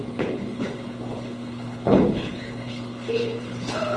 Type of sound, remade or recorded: remade